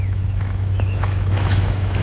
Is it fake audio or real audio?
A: fake